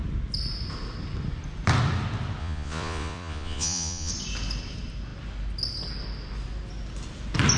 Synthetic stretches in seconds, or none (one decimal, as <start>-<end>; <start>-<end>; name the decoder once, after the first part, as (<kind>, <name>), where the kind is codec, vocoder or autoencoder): 2.4-4.1 (vocoder, Vocos)